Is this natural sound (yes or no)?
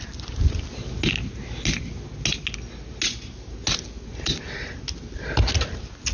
yes